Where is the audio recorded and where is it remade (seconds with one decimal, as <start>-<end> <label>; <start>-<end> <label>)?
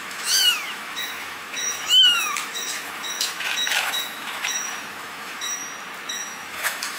0.0-5.6 remade; 5.6-6.1 recorded; 6.1-7.0 remade